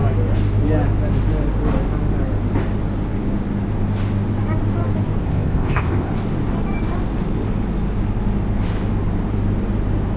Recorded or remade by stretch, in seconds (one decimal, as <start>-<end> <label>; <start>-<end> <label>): 0.0-5.2 recorded; 5.2-6.1 remade; 6.1-10.2 recorded